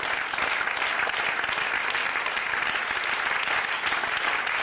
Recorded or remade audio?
recorded